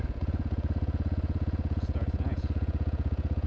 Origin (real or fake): fake